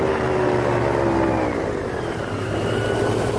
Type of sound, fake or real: real